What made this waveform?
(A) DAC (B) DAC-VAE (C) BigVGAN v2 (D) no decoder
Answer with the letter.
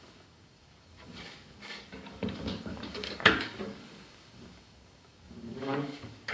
A